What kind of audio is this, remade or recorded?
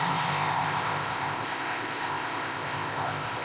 remade